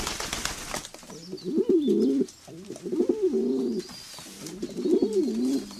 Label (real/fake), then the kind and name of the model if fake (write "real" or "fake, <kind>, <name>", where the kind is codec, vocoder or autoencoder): real